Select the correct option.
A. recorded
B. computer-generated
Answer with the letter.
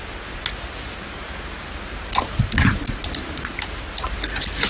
A